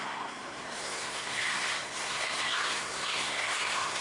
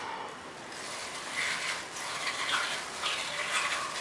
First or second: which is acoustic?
second